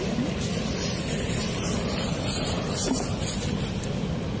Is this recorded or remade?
recorded